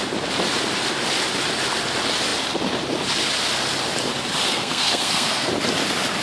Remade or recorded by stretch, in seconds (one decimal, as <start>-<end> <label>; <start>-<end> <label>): 0.0-4.5 recorded; 4.5-5.5 remade; 5.5-6.2 recorded